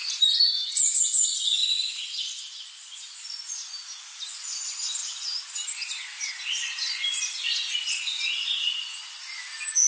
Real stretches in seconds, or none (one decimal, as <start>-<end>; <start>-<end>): 0.0-9.9